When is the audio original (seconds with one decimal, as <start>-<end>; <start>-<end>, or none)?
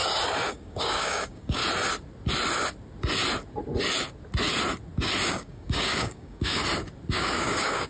0.0-0.5; 1.6-5.3; 6.6-7.1